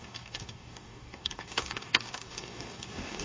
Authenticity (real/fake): fake